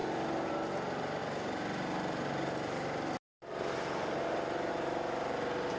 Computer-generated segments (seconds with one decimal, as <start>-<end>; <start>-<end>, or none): 0.0-5.8